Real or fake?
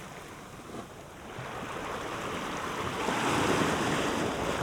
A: real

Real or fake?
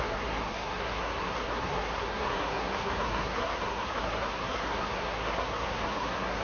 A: fake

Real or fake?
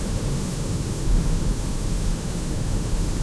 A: fake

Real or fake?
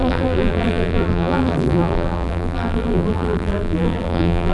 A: fake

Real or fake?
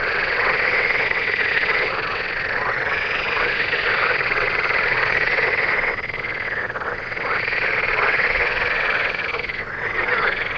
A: fake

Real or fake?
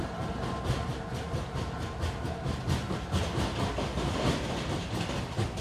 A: real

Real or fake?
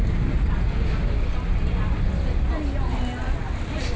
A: real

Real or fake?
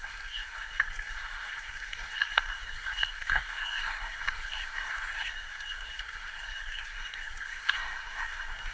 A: fake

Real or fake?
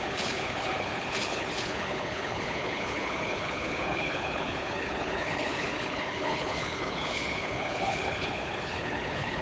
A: fake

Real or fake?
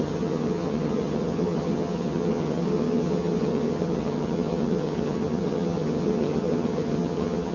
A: fake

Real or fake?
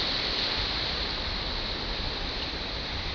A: real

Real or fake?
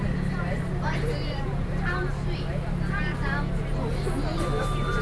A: real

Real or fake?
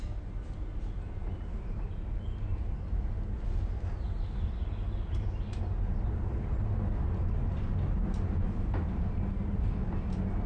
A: real